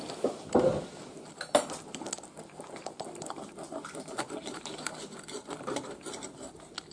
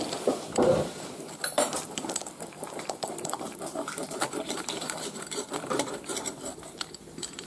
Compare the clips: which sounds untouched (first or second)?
first